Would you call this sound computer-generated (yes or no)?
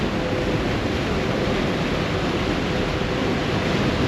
no